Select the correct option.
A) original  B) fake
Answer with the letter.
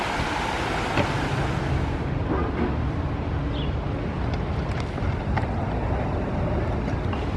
A